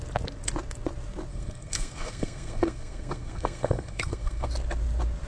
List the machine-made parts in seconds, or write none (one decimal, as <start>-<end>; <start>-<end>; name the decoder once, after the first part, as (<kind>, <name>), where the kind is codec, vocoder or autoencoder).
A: 1.3-4.5 (codec, SNAC)